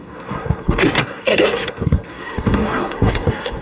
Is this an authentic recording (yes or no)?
no